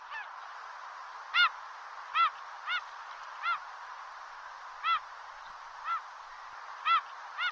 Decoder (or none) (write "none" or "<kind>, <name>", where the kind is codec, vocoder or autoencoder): none